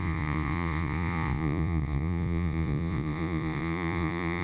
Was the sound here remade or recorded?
remade